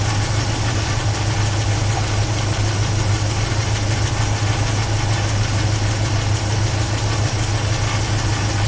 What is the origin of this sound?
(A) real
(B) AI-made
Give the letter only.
A